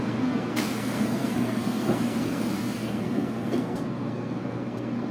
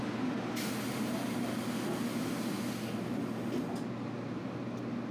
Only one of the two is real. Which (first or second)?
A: second